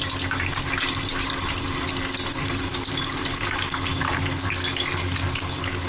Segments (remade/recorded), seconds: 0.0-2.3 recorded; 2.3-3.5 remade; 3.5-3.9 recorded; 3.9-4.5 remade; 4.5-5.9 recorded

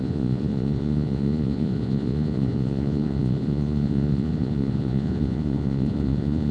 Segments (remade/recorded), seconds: 0.0-6.5 remade

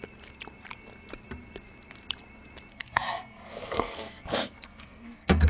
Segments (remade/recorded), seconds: 0.0-2.7 recorded; 2.7-5.5 remade

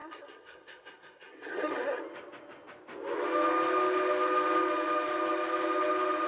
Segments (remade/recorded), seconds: 0.0-2.0 remade; 2.0-6.3 recorded

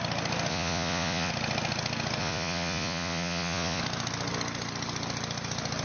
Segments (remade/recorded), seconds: 0.0-0.5 recorded; 0.5-1.3 remade; 1.3-2.2 recorded; 2.2-3.8 remade; 3.8-5.8 recorded

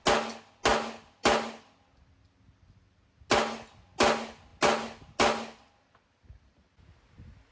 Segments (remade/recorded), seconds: 0.0-7.5 recorded